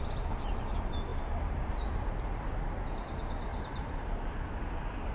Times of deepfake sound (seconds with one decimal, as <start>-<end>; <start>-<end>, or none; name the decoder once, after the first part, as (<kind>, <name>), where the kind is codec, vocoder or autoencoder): 1.1-2.1 (vocoder, BigVGAN v2); 3.5-4.2